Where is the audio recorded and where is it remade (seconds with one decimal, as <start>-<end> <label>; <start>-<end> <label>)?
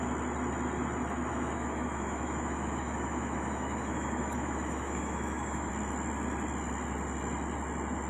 0.0-1.3 recorded; 1.3-5.7 remade; 5.7-8.1 recorded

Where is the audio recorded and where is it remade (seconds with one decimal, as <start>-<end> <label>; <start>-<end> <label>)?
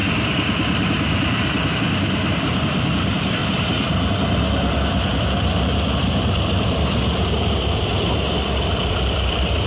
0.0-1.7 recorded; 1.7-3.4 remade; 3.4-5.1 recorded; 5.1-9.7 remade